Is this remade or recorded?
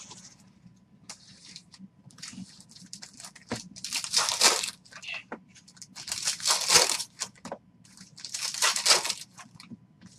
remade